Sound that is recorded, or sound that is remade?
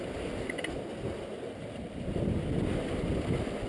recorded